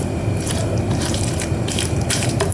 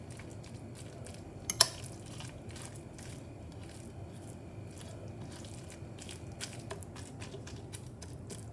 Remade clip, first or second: first